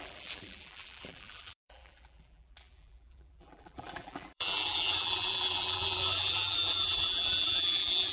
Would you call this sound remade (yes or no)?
yes